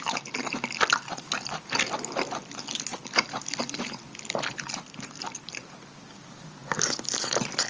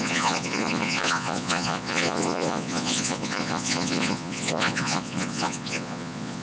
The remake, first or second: second